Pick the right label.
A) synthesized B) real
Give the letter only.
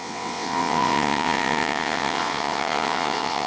A